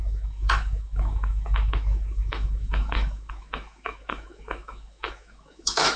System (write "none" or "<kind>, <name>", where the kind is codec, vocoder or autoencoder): autoencoder, DAC-VAE